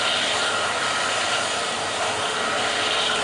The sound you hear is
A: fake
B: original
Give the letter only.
B